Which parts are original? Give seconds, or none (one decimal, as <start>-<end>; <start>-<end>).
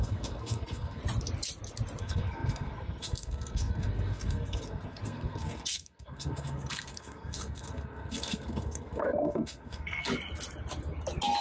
1.0-2.0; 10.1-11.4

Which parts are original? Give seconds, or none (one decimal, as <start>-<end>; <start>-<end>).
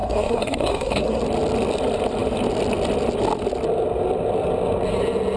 1.2-5.4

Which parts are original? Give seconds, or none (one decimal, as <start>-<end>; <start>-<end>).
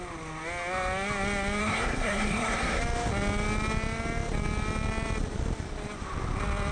0.0-1.6; 2.8-6.7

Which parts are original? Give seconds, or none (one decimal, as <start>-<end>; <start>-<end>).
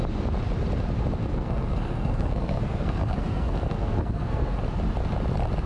0.0-1.2; 4.6-5.7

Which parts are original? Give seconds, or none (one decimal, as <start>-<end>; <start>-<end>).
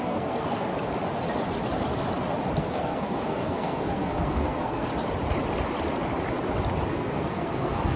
0.7-2.6; 4.9-6.9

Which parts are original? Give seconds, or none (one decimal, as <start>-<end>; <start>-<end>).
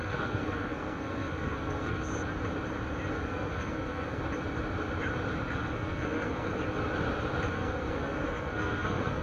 2.1-3.1; 4.2-5.5; 6.5-7.5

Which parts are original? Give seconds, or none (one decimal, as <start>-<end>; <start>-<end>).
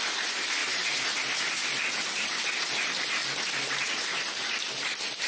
0.0-5.3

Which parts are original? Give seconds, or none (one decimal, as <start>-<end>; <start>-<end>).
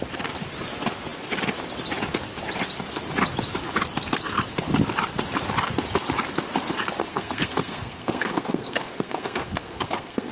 0.0-7.0